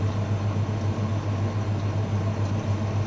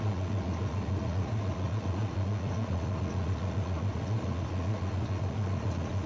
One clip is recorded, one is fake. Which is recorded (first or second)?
first